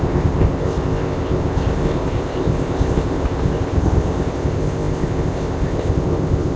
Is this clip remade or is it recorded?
remade